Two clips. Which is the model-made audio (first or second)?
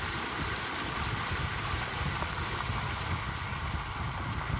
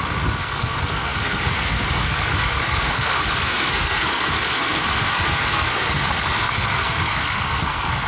second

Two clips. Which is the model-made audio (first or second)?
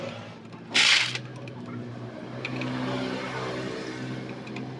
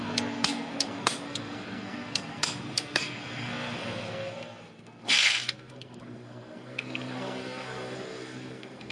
second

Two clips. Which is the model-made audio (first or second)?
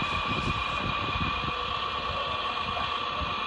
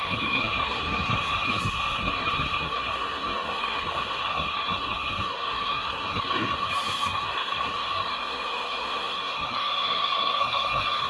second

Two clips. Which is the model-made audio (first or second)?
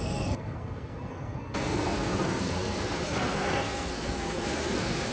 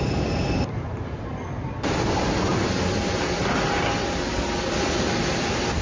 first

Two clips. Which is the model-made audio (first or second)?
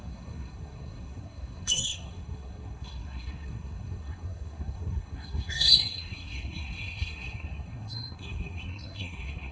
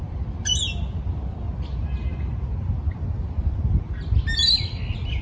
first